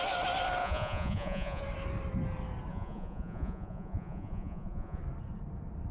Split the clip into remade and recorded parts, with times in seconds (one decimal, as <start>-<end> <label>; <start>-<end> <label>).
0.0-0.6 recorded; 0.6-1.6 remade; 1.6-2.7 recorded; 2.7-5.0 remade; 5.0-5.9 recorded